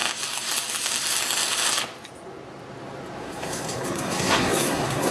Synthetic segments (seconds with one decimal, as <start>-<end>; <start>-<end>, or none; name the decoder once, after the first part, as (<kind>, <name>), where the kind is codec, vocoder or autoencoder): 3.2-5.1 (codec, SNAC)